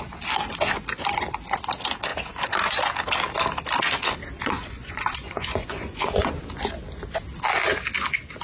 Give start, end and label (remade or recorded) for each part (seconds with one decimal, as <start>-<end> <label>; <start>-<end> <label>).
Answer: 0.0-2.1 recorded; 2.1-2.7 remade; 2.7-4.4 recorded; 4.4-6.3 remade; 6.3-8.4 recorded